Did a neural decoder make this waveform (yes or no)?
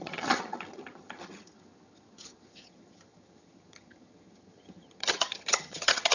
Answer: yes